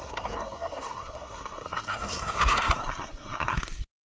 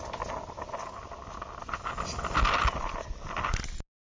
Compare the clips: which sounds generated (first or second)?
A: first